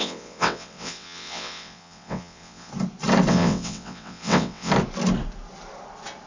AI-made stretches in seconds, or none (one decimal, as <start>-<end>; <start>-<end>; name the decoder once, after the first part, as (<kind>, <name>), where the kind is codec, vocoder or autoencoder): 0.0-2.7 (vocoder, WaveNeXt); 3.3-4.7